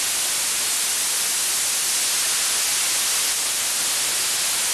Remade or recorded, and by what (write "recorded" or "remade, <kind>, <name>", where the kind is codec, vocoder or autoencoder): recorded